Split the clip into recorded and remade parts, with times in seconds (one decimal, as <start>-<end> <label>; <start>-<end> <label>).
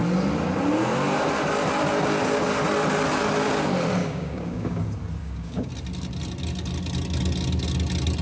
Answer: 0.0-4.0 recorded; 4.0-4.8 remade; 4.8-5.2 recorded; 5.2-5.7 remade; 5.7-8.2 recorded